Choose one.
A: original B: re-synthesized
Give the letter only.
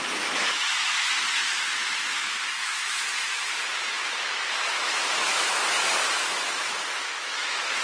B